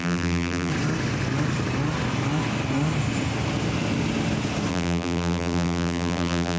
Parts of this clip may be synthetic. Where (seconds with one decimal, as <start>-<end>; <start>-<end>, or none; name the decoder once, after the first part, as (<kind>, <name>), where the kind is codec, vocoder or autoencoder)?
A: 0.0-0.7 (vocoder, BigVGAN v2); 4.7-6.6